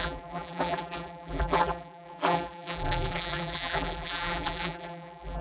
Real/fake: fake